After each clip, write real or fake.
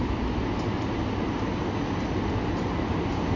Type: real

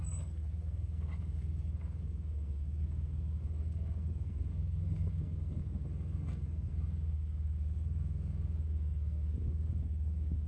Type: fake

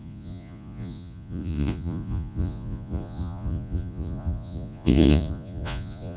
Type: fake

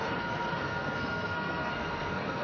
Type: fake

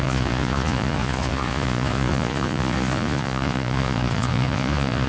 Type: fake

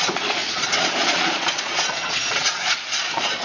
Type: fake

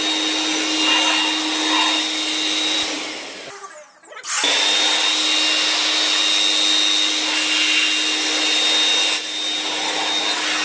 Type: real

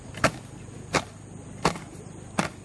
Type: real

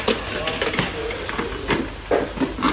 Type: real